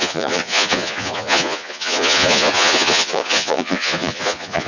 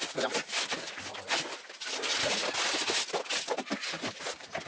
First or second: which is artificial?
first